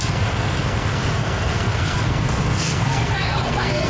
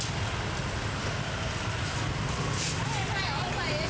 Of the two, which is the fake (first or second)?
first